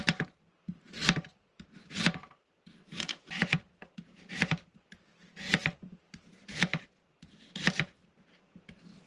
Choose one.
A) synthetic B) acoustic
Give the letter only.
A